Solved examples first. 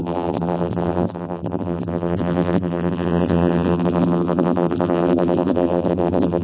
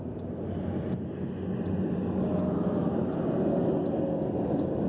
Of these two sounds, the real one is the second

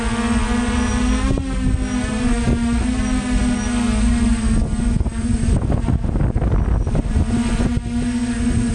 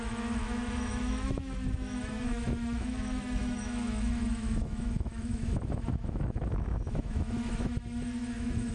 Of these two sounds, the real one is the first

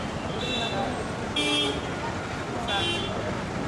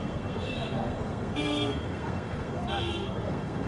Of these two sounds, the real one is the first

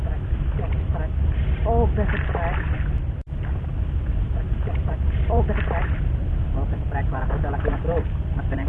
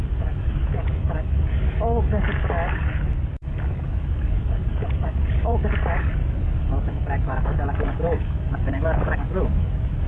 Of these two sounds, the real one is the first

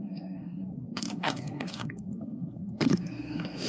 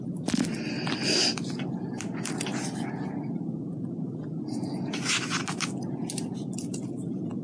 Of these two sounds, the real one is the second